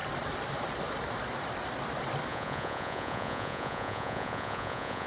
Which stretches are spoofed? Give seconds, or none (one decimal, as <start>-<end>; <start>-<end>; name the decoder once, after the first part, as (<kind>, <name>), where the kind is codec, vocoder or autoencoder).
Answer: 2.3-5.1 (vocoder, Vocos)